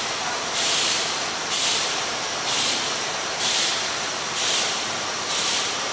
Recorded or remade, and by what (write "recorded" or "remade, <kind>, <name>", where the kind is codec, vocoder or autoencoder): remade, vocoder, BigVGAN v2